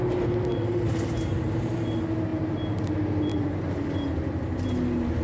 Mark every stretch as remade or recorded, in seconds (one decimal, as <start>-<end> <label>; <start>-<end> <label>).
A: 0.0-1.3 recorded; 1.3-1.8 remade; 1.8-3.3 recorded; 3.3-4.7 remade; 4.7-5.2 recorded